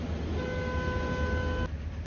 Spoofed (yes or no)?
no